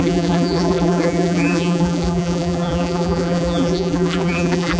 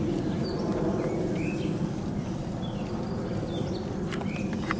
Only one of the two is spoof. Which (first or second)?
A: first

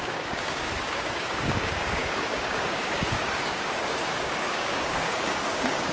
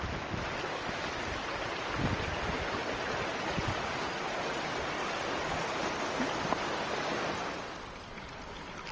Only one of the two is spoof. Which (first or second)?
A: first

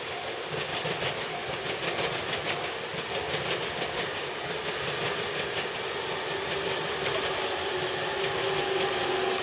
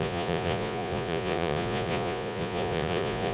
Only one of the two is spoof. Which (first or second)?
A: second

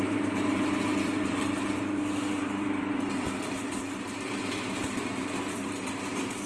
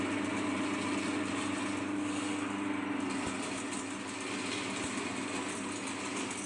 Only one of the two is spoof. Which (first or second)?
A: first